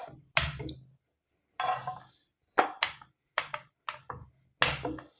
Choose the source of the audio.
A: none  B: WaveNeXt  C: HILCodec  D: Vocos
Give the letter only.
A